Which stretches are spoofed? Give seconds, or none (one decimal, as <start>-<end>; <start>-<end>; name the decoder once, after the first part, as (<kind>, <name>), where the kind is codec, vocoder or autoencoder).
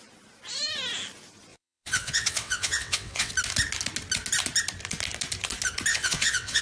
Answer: 1.5-3.3 (vocoder, WaveNeXt); 5.9-6.6